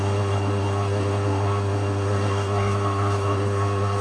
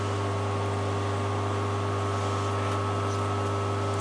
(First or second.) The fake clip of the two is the first